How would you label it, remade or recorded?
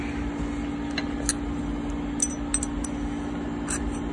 recorded